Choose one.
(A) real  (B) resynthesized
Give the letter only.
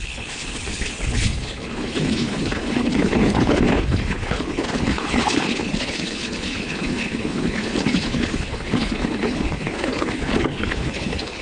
B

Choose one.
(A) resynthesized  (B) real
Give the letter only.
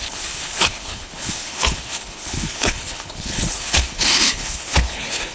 A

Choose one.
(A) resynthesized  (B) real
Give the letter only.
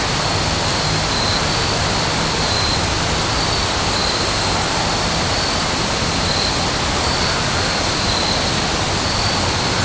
B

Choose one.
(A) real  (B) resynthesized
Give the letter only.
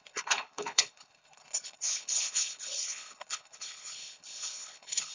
B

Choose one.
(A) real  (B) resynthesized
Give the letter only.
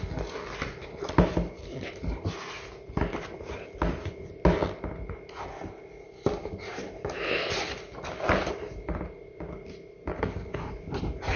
A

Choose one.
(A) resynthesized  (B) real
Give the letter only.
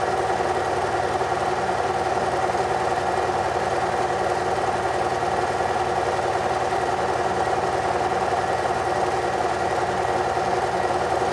B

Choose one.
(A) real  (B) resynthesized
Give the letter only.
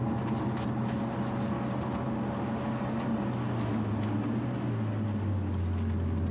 A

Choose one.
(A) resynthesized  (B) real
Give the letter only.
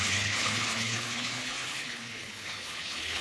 A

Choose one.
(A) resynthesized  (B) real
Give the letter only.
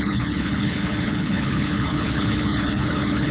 A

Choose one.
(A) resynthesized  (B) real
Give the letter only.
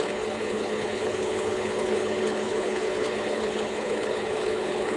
A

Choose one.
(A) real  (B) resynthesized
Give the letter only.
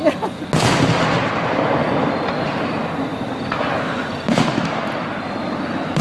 A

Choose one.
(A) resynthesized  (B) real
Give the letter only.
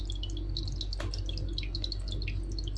B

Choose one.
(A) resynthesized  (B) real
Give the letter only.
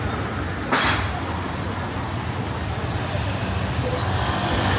B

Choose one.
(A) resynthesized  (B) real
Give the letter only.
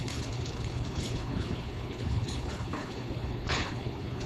A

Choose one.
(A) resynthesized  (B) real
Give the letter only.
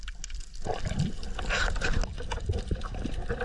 B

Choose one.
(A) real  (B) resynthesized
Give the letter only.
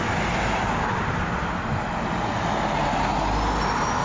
A